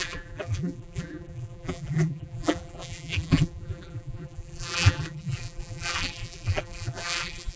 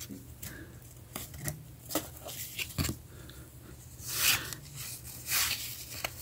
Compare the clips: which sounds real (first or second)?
second